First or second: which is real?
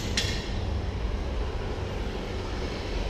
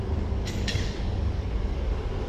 first